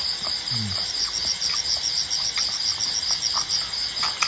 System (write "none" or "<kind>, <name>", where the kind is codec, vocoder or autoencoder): none